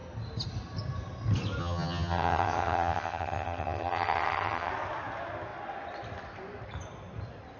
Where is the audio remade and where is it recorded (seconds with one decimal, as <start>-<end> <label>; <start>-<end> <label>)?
0.0-1.6 recorded; 1.6-4.7 remade; 4.7-7.6 recorded